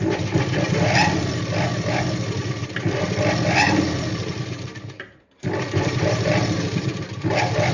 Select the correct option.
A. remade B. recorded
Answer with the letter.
B